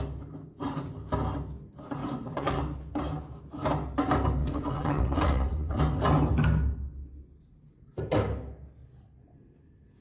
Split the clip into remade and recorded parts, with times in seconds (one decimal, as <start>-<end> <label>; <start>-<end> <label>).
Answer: 0.0-2.0 recorded; 2.0-2.6 remade; 2.6-4.4 recorded; 4.4-5.8 remade; 5.8-10.0 recorded